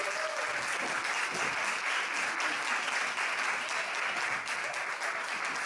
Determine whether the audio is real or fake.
real